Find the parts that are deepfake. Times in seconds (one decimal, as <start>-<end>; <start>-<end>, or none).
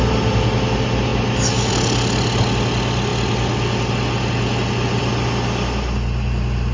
none